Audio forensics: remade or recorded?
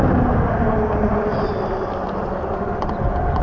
recorded